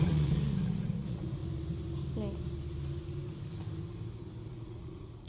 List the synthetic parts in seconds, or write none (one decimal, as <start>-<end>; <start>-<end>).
0.0-1.4; 4.5-5.3